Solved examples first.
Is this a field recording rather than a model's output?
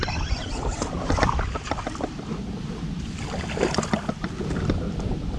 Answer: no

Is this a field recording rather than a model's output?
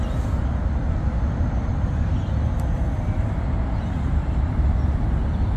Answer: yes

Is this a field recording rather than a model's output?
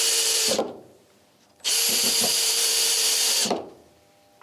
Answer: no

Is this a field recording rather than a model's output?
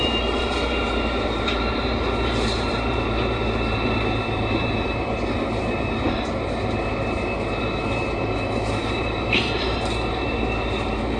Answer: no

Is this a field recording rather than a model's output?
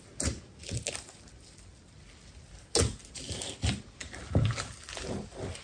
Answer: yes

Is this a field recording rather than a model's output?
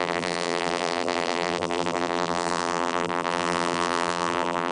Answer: no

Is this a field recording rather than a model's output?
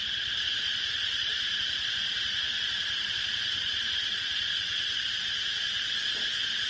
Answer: yes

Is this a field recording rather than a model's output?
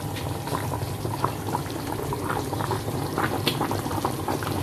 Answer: no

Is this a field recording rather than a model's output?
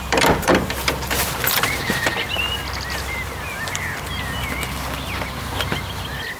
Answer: no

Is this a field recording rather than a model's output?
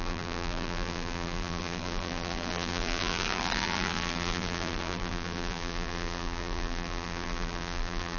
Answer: no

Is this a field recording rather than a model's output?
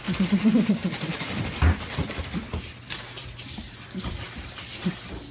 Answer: no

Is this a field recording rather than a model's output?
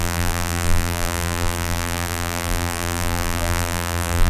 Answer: no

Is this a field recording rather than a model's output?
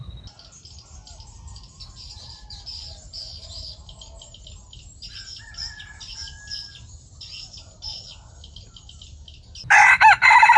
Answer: yes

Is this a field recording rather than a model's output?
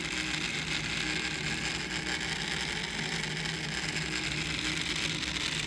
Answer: yes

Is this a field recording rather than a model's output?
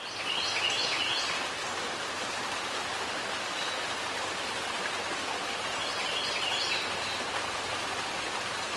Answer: no